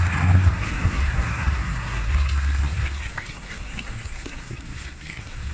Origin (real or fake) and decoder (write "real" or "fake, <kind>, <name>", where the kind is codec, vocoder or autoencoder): fake, codec, SNAC